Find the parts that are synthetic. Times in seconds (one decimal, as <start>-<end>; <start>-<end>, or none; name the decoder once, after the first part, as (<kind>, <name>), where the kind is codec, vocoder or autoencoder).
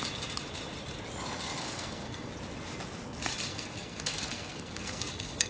1.6-2.3 (codec, SNAC); 3.5-5.5